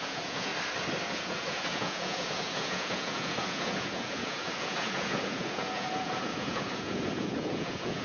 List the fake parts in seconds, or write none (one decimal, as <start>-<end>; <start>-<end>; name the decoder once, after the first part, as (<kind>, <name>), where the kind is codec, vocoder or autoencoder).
0.0-0.5 (vocoder, Vocos); 1.1-8.0